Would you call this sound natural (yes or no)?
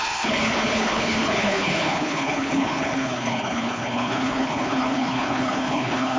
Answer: no